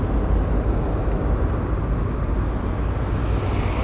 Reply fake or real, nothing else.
real